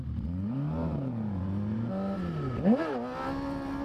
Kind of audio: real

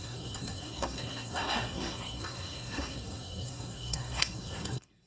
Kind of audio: fake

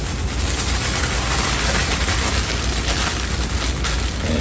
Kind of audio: real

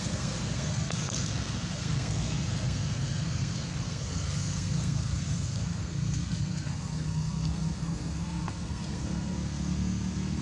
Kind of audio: fake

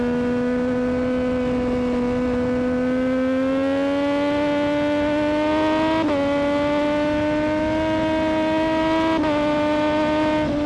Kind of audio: real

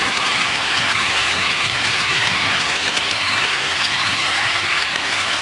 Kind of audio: fake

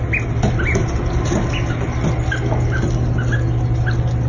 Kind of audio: real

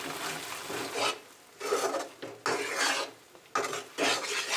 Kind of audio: real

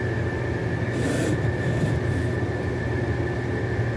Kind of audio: real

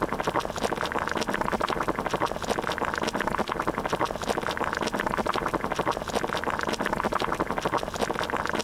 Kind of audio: real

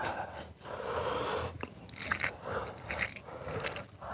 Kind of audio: real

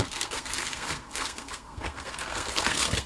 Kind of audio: fake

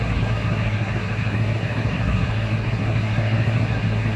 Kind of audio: fake